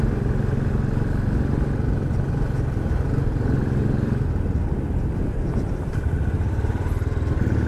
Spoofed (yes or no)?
no